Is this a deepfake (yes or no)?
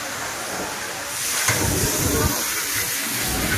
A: no